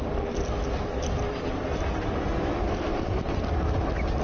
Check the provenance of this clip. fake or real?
real